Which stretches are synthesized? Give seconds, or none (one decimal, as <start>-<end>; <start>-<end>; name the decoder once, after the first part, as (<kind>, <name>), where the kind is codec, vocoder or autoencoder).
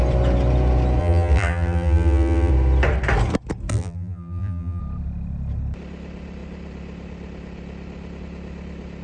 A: 1.0-2.5 (vocoder, BigVGAN v2); 3.7-4.8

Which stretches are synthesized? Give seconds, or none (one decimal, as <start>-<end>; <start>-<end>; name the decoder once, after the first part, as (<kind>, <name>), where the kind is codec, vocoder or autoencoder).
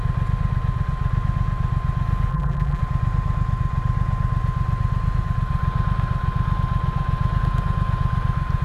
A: 2.3-2.8 (vocoder, BigVGAN v2)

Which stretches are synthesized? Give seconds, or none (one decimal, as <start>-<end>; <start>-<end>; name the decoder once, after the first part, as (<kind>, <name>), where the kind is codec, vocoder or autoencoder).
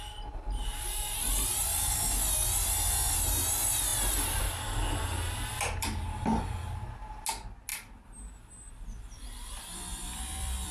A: 7.7-10.7 (vocoder, BigVGAN v2)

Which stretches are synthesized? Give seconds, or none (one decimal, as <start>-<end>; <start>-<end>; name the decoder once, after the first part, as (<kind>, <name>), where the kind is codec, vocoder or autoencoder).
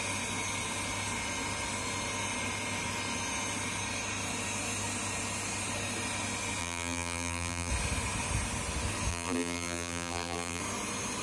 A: 6.6-7.7 (vocoder, BigVGAN v2); 9.1-10.6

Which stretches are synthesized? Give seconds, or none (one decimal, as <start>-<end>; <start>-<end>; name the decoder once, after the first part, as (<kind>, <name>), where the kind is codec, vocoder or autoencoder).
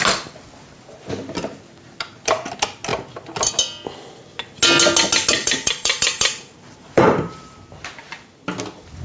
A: 5.4-7.6 (vocoder, BigVGAN v2)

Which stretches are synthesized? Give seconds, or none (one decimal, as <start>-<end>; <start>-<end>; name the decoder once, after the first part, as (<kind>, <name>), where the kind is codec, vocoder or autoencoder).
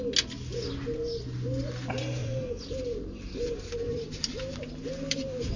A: 2.2-5.6 (vocoder, BigVGAN v2)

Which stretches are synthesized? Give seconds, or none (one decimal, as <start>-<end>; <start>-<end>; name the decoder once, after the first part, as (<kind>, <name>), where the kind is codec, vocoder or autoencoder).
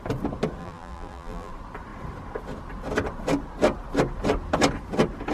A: 0.6-1.5 (vocoder, BigVGAN v2)